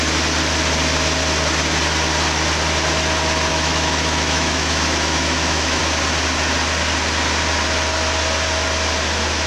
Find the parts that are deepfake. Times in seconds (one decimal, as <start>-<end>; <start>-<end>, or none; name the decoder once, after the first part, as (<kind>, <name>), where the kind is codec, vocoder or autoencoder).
3.5-5.8 (autoencoder, DAC-VAE)